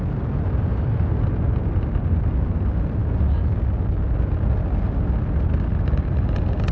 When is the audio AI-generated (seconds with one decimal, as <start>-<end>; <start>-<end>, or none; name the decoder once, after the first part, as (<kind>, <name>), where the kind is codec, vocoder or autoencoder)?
none